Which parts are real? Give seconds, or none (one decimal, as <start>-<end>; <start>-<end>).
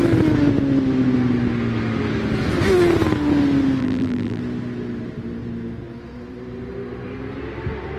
0.0-3.8; 4.4-8.0